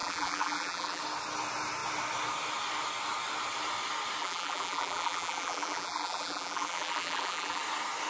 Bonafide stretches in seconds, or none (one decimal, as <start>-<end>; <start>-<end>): 1.0-4.2; 7.6-8.1